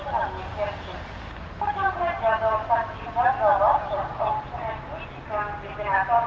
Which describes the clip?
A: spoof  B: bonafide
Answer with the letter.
B